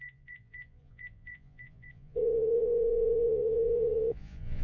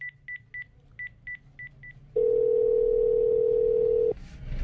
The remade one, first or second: first